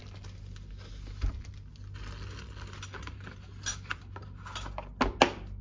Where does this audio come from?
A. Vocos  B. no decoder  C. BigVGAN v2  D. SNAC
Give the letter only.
B